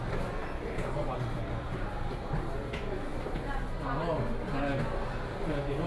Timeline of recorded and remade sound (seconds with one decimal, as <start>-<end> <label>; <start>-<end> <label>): 0.0-5.9 recorded